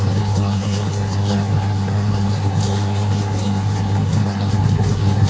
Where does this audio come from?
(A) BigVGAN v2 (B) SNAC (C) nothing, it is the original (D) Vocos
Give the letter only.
B